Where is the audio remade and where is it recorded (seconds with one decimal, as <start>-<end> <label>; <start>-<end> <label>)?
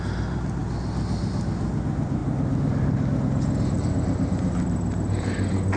0.0-5.8 recorded